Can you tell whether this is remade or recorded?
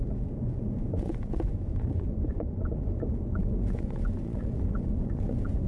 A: remade